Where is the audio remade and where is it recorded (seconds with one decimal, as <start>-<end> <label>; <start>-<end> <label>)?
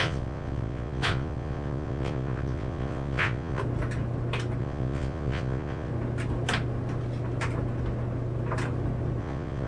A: 0.0-3.6 remade; 3.6-4.6 recorded; 4.6-5.9 remade; 5.9-9.2 recorded; 9.2-9.7 remade